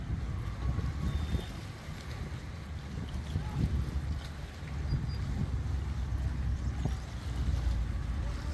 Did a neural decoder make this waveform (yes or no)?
no